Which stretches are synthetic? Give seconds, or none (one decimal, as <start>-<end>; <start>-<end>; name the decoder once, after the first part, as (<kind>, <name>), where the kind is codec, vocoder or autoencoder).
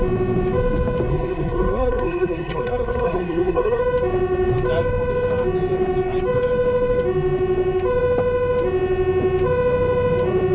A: 1.1-3.8 (codec, SNAC)